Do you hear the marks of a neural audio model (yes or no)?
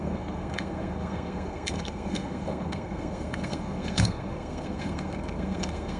yes